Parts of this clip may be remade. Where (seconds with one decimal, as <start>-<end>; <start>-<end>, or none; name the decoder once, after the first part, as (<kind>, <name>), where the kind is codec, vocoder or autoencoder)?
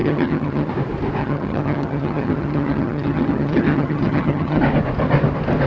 0.0-0.7 (vocoder, HiFi-GAN); 1.2-4.6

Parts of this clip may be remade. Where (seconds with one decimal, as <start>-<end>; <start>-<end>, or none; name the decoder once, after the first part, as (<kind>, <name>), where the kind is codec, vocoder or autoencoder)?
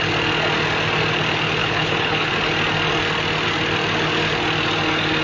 1.6-2.3 (codec, HILCodec)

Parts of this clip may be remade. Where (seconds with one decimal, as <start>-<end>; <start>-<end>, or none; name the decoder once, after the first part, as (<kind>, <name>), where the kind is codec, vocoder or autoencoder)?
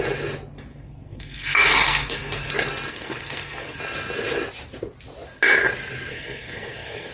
0.7-2.5 (codec, SNAC); 2.9-3.8; 6.1-7.1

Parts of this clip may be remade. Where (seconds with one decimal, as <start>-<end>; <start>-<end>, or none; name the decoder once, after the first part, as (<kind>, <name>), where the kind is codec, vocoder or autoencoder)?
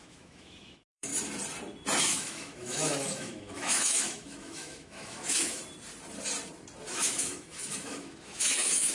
0.0-1.1 (autoencoder, DAC-VAE); 2.0-5.6; 6.9-8.9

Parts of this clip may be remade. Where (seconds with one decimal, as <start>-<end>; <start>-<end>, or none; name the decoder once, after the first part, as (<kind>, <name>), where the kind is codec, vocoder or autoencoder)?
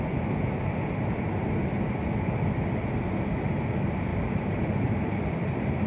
none